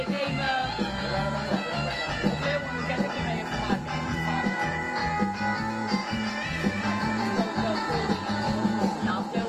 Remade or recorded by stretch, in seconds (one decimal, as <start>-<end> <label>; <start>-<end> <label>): 0.0-5.0 remade; 5.0-5.7 recorded; 5.7-9.5 remade